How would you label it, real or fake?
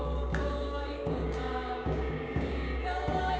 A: fake